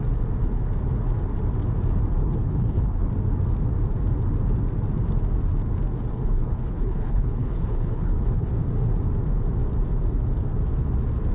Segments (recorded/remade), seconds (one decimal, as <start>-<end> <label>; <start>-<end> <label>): 0.0-2.2 recorded; 2.2-3.1 remade; 3.1-6.1 recorded; 6.1-8.5 remade; 8.5-11.3 recorded